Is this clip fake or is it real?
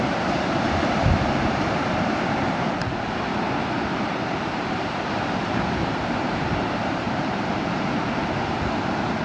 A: fake